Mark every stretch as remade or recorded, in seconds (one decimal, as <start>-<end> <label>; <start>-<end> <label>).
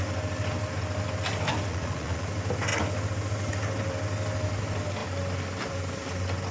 0.0-1.7 recorded; 1.7-2.3 remade; 2.3-6.5 recorded